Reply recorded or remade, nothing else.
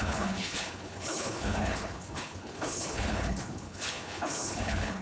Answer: remade